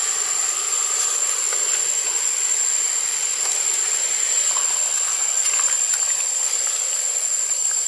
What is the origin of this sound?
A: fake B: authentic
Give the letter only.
B